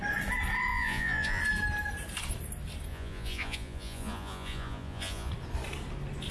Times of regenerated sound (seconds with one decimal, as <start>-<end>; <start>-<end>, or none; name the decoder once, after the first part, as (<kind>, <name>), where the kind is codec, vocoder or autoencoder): 0.7-1.4 (vocoder, Vocos); 2.9-5.3